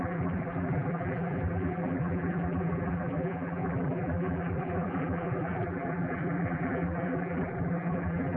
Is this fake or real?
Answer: fake